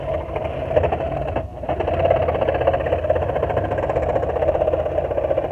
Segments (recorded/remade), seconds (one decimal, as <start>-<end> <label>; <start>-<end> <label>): 0.0-5.5 recorded